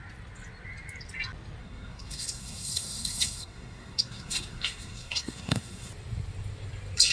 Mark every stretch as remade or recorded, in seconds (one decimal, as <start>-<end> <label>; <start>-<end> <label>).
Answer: 0.0-1.6 recorded; 1.6-5.9 remade; 5.9-7.1 recorded